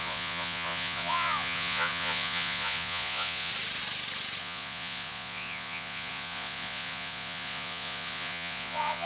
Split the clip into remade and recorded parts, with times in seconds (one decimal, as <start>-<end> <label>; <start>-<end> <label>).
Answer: 0.0-3.5 remade; 3.5-4.4 recorded; 4.4-9.1 remade